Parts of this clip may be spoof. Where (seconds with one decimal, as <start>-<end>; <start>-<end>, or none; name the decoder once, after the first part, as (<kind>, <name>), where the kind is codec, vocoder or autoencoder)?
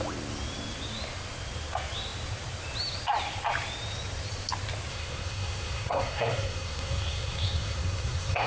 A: 4.9-8.5 (codec, SNAC)